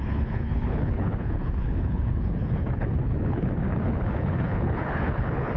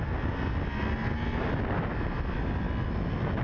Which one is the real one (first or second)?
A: second